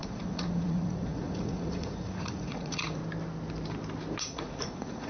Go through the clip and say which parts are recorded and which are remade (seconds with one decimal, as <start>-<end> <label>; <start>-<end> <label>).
0.0-3.0 remade; 3.0-4.2 recorded; 4.2-5.1 remade